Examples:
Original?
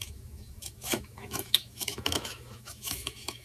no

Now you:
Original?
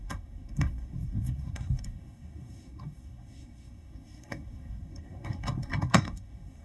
no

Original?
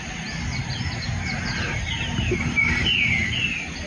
yes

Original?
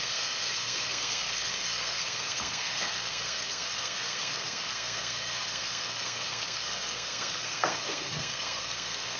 no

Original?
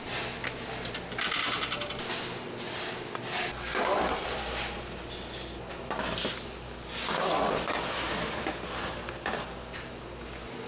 yes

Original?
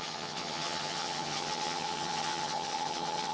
no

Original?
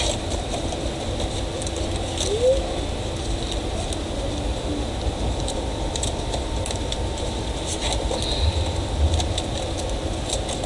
yes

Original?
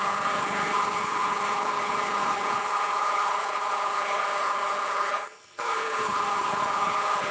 no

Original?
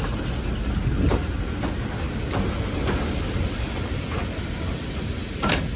yes